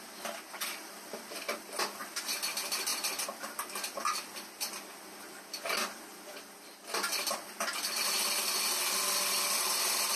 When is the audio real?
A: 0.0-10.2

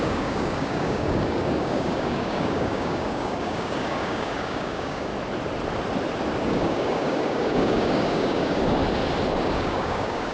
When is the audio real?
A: 5.1-6.4; 8.8-9.4

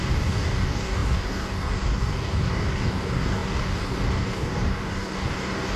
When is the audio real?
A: none

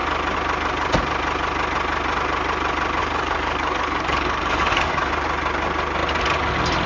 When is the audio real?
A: 0.0-3.0; 5.1-6.9

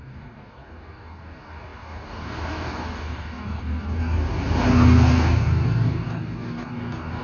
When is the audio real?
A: none